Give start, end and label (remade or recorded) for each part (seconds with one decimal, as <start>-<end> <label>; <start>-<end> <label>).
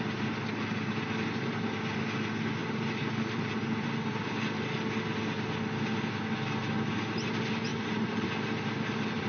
0.0-2.6 recorded; 2.6-4.9 remade; 4.9-7.7 recorded; 7.7-9.3 remade